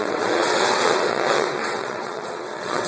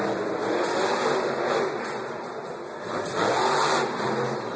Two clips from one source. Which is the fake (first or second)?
first